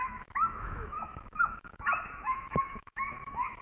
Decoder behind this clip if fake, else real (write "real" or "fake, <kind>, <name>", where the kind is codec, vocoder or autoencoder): fake, autoencoder, DAC-VAE